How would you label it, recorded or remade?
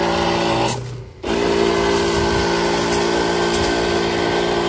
recorded